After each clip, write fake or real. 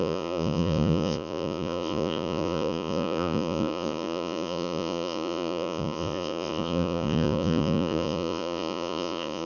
fake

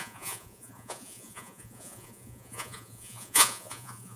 fake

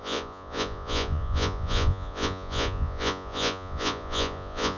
fake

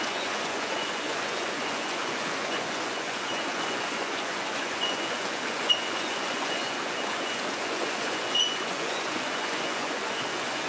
fake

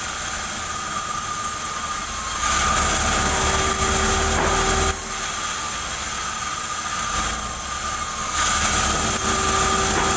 real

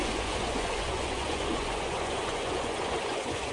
fake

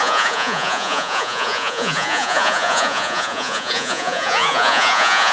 fake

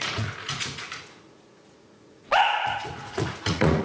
fake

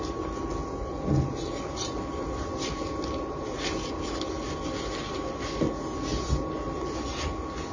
real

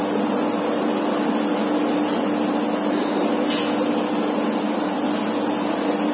real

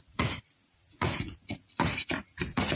fake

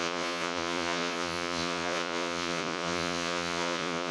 fake